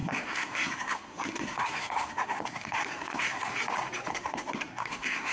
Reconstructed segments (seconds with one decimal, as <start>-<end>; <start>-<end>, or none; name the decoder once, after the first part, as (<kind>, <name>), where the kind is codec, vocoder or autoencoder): 0.0-3.5 (codec, SNAC); 4.1-5.3